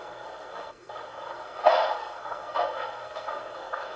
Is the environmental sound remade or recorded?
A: remade